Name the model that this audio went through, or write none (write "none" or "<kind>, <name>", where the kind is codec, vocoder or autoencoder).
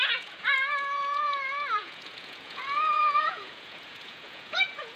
vocoder, Vocos